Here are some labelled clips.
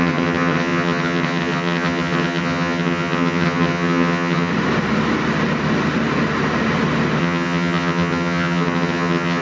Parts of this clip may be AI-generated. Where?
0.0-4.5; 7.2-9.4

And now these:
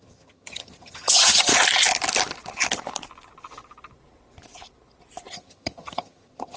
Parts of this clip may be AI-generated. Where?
0.0-1.5; 5.3-6.6

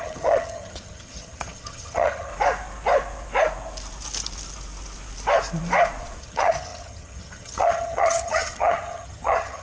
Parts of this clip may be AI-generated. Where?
0.0-2.3; 6.2-9.6

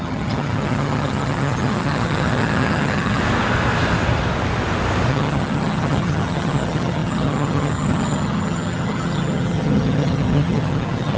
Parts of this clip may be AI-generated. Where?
0.0-3.2; 5.1-11.2

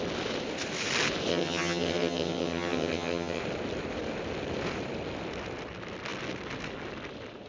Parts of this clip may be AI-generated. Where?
1.3-3.4